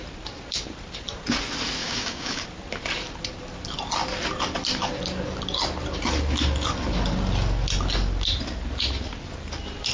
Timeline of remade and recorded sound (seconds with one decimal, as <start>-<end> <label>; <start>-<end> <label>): 0.0-1.8 recorded; 1.8-2.4 remade; 2.4-9.9 recorded